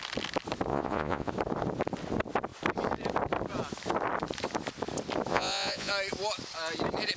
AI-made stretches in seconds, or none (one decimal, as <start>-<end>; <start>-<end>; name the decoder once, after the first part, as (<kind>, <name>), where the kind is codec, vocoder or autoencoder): 0.7-1.3 (vocoder, Vocos); 5.3-5.9